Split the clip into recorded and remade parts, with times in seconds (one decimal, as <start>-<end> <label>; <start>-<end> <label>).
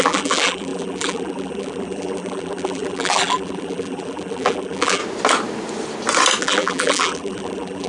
0.0-5.0 remade; 5.0-6.4 recorded; 6.4-7.9 remade